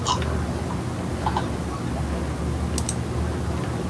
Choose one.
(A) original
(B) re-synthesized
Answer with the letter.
A